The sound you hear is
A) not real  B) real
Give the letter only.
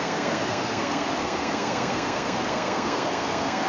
A